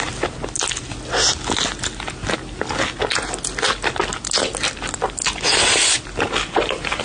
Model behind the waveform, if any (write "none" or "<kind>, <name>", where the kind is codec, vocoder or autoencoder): none